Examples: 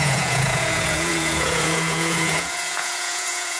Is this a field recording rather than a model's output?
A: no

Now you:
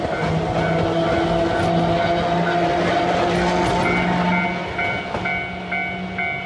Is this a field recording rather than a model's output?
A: yes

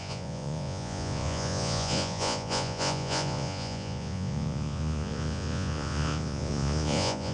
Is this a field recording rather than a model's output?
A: no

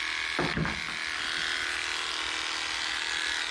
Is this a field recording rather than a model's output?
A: yes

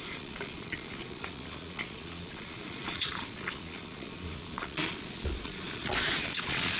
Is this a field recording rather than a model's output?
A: no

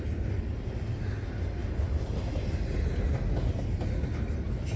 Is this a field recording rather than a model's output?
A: yes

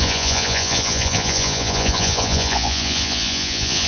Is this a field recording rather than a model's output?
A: no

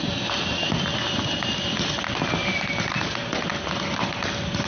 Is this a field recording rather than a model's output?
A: yes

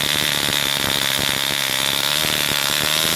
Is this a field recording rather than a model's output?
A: yes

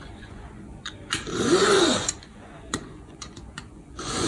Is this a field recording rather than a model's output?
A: no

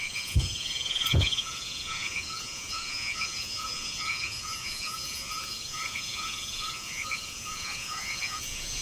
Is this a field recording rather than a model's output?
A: no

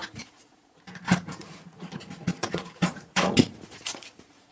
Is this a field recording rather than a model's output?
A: no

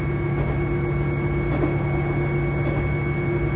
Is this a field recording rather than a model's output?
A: yes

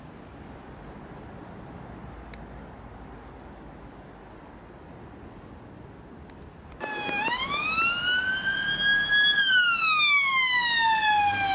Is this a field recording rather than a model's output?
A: yes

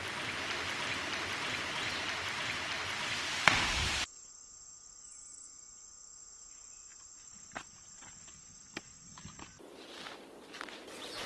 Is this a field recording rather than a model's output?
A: yes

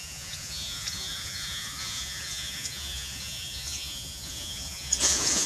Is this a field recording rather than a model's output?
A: no